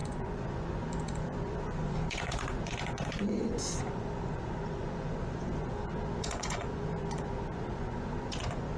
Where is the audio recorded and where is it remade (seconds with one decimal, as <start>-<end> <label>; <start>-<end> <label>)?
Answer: 0.0-8.8 remade